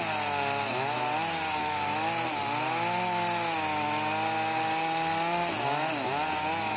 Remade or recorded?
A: recorded